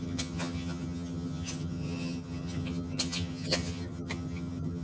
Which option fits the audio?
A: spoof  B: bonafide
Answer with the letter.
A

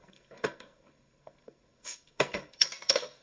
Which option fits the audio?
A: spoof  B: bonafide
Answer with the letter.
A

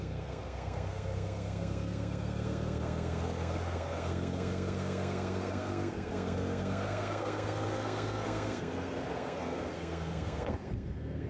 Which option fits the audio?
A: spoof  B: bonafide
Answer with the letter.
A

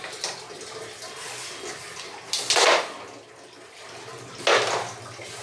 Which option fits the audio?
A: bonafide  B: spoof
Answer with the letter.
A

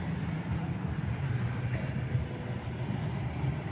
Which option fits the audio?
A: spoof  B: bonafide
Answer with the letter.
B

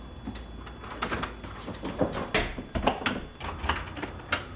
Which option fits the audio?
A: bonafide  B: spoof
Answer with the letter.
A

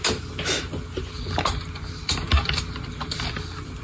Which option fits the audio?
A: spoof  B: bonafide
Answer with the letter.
B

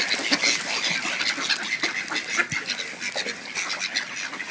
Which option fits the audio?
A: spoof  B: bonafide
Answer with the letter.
B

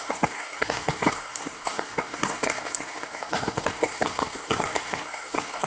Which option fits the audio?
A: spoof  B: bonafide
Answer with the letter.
A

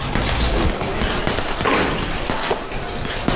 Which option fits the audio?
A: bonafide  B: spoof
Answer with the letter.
A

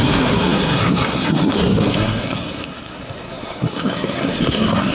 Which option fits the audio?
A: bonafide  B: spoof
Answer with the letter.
B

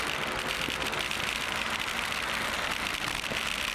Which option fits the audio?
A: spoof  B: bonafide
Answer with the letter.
B